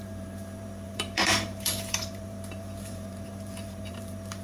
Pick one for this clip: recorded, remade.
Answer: remade